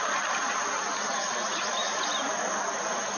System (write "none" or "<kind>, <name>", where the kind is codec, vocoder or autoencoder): none